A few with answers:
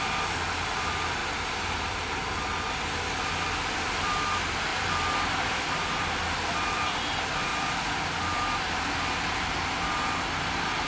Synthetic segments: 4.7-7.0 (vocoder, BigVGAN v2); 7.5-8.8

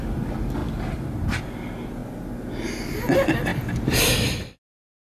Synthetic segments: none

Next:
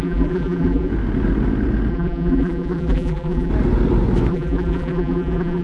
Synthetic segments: 0.0-0.9 (vocoder, BigVGAN v2); 1.9-3.5; 4.3-5.6